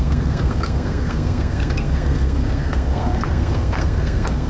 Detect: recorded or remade remade